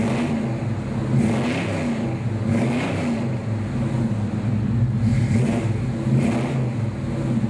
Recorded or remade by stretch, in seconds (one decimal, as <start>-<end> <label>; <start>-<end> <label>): 0.0-2.5 recorded; 2.5-3.0 remade; 3.0-7.5 recorded